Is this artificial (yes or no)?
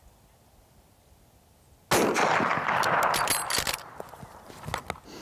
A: no